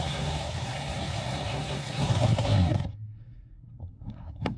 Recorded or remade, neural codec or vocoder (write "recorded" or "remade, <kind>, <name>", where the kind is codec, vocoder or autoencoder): remade, codec, SNAC